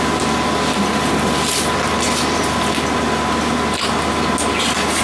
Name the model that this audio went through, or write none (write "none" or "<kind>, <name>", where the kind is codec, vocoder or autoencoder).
none